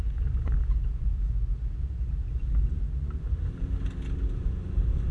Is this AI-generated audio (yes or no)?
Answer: no